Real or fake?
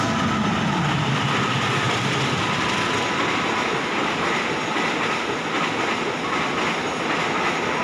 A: real